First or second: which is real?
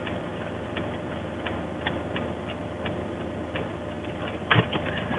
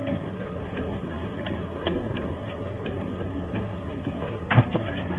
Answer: first